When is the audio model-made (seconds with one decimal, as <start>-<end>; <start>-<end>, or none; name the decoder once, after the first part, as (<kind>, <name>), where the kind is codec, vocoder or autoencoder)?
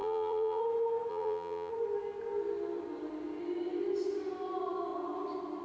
0.0-0.6 (vocoder, BigVGAN v2); 1.1-1.7